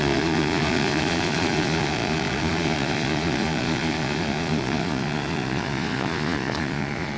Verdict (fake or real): fake